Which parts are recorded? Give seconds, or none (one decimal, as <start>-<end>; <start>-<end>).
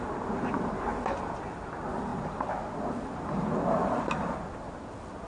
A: 0.0-5.3